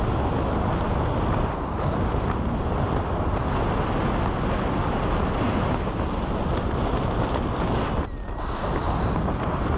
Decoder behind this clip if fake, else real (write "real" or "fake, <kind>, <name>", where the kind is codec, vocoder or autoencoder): real